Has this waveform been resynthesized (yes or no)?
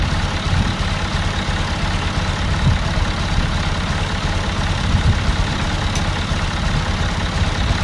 no